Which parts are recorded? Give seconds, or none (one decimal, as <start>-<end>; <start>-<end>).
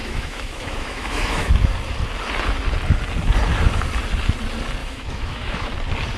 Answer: 1.5-4.8; 5.7-6.2